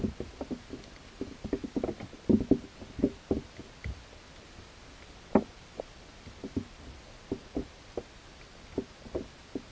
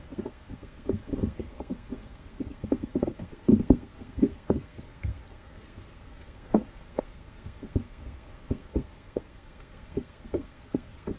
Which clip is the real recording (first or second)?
first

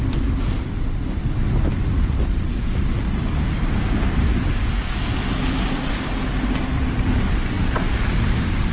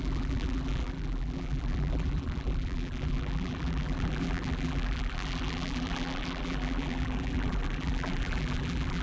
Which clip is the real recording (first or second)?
first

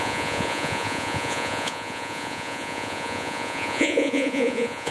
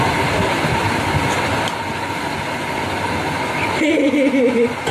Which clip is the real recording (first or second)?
second